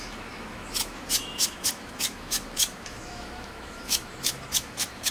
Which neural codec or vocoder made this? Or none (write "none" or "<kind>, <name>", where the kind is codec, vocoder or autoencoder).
autoencoder, DAC-VAE